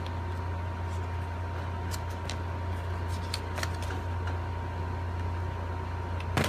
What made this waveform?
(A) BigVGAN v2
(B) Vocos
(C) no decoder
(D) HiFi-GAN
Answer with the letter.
C